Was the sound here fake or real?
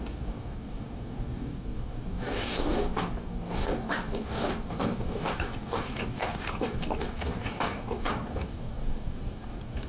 fake